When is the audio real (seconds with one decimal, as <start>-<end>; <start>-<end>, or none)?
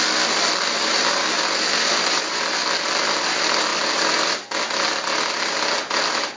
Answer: 0.0-6.4